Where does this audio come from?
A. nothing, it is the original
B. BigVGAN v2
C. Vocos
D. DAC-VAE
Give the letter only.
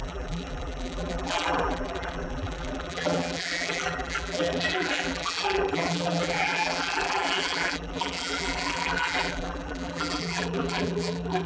B